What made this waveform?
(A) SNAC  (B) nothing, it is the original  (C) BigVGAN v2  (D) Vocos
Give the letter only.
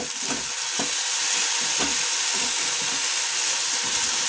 B